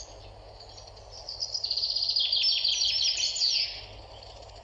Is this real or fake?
real